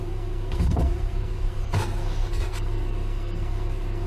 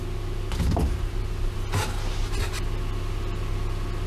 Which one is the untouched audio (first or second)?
second